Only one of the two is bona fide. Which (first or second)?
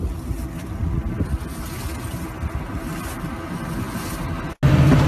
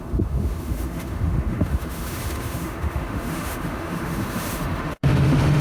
first